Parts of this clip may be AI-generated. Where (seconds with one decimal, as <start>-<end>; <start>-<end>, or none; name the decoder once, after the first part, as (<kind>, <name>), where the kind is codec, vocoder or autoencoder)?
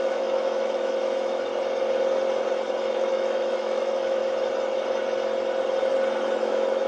0.0-1.5 (autoencoder, DAC-VAE); 2.8-4.2; 6.4-6.9